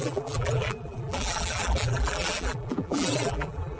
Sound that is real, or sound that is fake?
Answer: fake